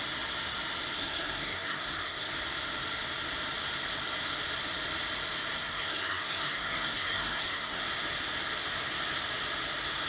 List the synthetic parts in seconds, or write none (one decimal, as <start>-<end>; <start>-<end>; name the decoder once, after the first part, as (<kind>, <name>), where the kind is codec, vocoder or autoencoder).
1.0-2.3 (codec, SNAC); 5.5-7.8